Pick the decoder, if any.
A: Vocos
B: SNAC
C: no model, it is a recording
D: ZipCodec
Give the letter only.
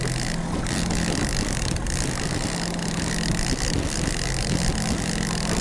C